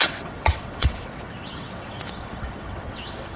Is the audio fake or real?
fake